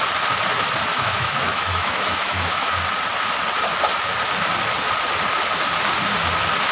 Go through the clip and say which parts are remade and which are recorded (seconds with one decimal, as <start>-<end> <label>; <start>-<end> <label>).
0.0-0.9 recorded; 0.9-2.7 remade; 2.7-6.7 recorded